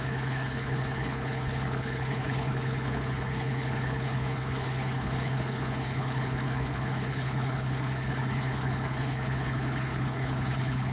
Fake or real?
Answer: fake